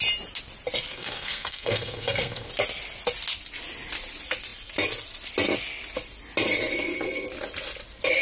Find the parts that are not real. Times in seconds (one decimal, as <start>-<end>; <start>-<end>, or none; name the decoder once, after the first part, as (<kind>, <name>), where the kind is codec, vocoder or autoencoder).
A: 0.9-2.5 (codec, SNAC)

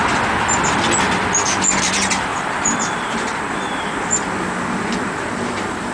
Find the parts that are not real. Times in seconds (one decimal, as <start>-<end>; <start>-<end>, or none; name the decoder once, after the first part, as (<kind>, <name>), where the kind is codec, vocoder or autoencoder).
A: 2.3-5.9 (vocoder, BigVGAN v2)

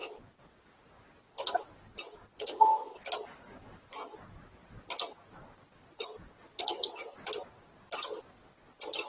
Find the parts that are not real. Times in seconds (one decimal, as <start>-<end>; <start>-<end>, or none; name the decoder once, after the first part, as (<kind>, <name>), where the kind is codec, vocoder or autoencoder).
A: 4.6-6.6 (vocoder, BigVGAN v2)